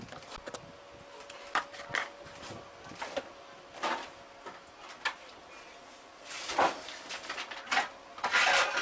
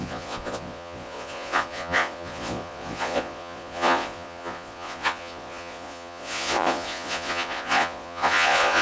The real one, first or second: first